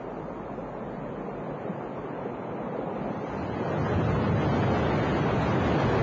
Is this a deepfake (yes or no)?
no